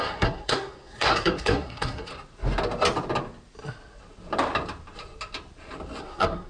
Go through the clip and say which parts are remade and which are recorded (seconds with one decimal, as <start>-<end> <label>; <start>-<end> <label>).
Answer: 0.0-2.1 remade; 2.1-6.0 recorded; 6.0-6.5 remade